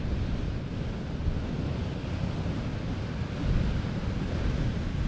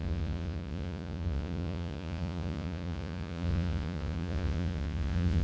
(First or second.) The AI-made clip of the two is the second